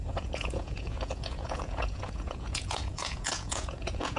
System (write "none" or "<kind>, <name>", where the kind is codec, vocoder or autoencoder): vocoder, Vocos